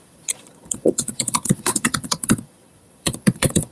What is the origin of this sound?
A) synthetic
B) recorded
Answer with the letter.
A